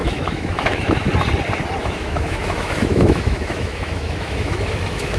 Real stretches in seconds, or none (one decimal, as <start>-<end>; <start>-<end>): 1.1-1.8